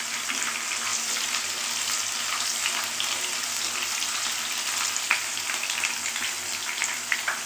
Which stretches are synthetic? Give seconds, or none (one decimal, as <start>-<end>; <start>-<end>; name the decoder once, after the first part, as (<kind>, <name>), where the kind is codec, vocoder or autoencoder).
none